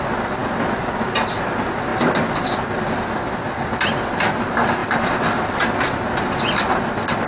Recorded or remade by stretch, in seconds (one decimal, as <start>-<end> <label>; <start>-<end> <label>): 0.0-7.3 recorded